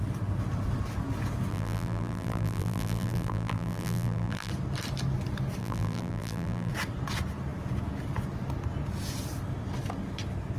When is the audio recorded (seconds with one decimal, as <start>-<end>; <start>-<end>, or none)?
0.0-1.5; 4.5-5.6; 6.7-10.6